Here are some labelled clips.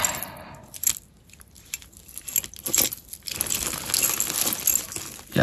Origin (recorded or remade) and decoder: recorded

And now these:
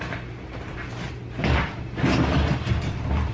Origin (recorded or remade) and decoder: recorded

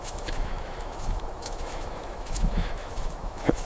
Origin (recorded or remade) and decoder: remade, autoencoder, DAC-VAE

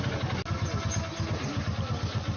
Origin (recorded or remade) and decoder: recorded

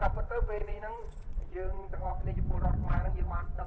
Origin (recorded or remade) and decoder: remade, vocoder, WaveNeXt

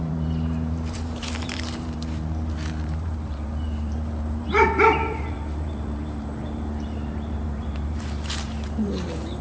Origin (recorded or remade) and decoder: remade, vocoder, BigVGAN v2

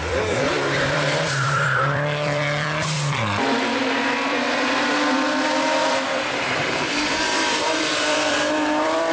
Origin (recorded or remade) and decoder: remade, vocoder, BigVGAN v2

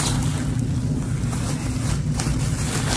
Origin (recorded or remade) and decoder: recorded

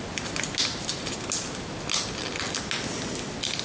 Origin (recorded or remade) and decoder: recorded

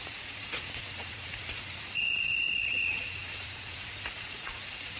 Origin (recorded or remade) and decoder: remade, vocoder, Vocos